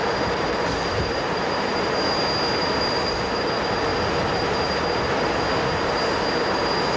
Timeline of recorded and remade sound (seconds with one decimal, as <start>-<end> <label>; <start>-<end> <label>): 0.0-1.5 remade; 1.5-2.6 recorded; 2.6-3.4 remade; 3.4-3.9 recorded; 3.9-4.7 remade; 4.7-7.0 recorded